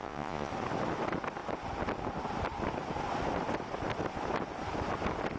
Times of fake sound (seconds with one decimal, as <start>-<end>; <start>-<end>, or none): 0.0-0.5